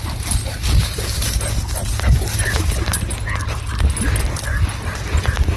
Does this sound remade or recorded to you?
recorded